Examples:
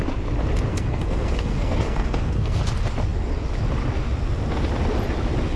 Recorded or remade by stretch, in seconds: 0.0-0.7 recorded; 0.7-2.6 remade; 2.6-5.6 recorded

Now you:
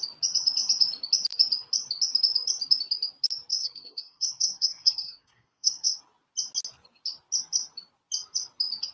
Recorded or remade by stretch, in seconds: 0.0-3.5 recorded; 3.5-6.0 remade; 6.0-8.9 recorded

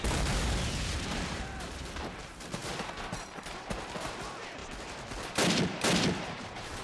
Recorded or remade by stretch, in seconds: 0.0-4.6 remade; 4.6-6.3 recorded; 6.3-6.8 remade